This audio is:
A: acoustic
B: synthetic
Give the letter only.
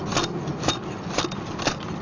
A